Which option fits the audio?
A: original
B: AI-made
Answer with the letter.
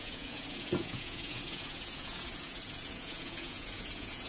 B